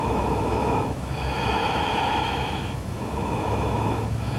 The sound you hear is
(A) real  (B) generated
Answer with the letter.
B